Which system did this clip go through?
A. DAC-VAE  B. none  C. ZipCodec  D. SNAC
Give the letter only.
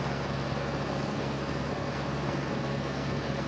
D